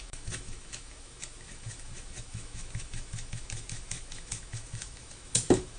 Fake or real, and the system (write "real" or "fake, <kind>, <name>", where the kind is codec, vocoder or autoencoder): fake, autoencoder, DAC-VAE